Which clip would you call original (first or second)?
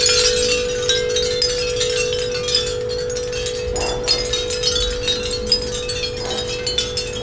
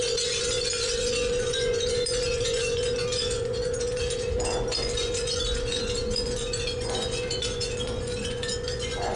first